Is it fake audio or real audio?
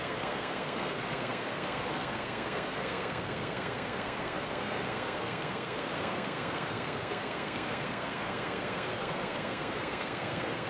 fake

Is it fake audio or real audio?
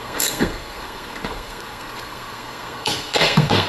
fake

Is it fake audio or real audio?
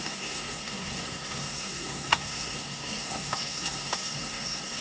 fake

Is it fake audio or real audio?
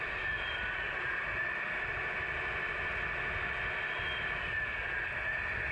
real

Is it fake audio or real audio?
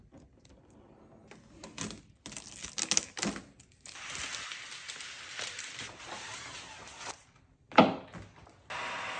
real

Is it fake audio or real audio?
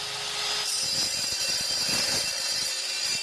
real